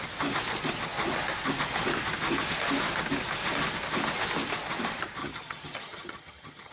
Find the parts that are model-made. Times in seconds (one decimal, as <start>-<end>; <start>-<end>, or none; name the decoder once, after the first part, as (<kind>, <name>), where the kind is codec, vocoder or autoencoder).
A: 5.2-6.7 (vocoder, HiFi-GAN)